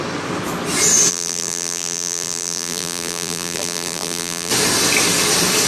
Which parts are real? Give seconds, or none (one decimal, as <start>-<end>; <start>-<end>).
0.0-1.1; 4.5-5.7